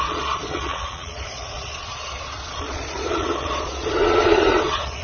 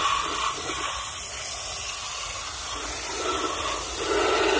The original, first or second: second